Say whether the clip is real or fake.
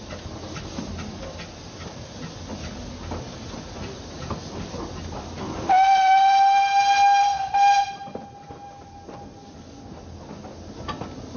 real